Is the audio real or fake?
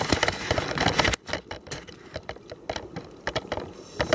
real